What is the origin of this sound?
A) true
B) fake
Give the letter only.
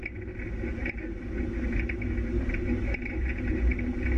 A